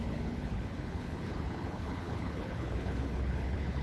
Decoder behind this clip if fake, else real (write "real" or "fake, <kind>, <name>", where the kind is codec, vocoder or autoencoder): fake, codec, HILCodec